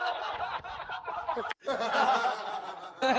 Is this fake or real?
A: fake